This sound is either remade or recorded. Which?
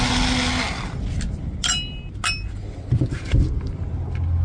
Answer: recorded